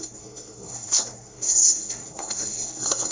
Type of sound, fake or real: fake